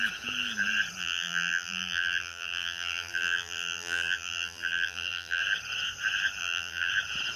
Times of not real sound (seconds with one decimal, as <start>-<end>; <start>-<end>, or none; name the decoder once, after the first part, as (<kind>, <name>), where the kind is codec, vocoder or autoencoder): 1.0-5.4 (vocoder, BigVGAN v2); 6.4-6.9